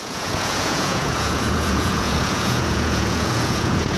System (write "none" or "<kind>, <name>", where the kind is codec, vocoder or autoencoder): vocoder, Vocos